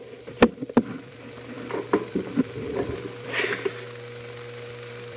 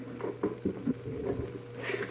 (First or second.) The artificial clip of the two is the first